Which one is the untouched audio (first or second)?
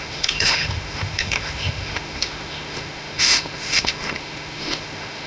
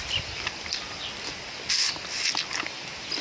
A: second